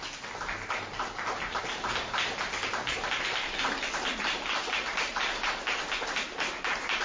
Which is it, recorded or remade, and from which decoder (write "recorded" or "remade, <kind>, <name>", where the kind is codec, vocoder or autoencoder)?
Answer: recorded